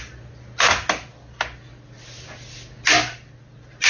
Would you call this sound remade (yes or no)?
no